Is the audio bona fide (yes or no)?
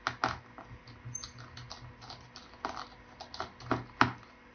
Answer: yes